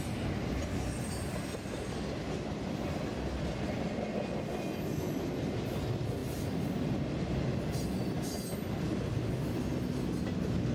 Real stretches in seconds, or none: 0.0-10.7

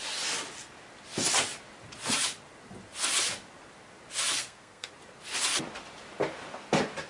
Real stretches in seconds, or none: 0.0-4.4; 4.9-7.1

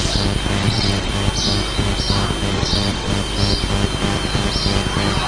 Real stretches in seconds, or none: 0.0-0.6; 1.1-2.5; 3.1-5.3

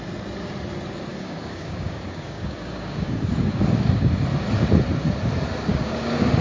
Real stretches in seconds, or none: 0.0-1.1; 4.1-5.7

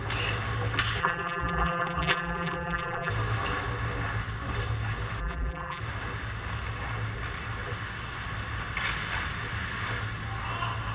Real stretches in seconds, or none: 0.0-1.0; 3.1-5.2; 5.8-10.9